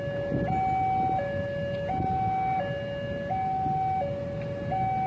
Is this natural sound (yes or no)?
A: yes